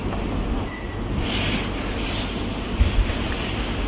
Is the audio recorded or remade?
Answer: recorded